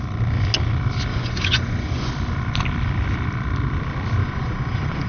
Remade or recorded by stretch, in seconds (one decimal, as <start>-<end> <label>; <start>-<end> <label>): 0.0-1.1 recorded; 1.1-2.1 remade; 2.1-4.2 recorded; 4.2-5.1 remade